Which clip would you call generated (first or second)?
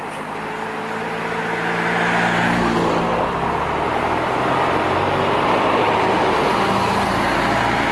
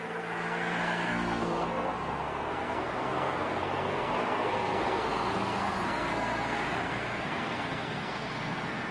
second